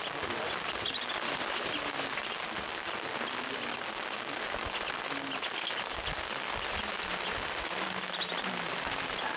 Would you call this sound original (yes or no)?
yes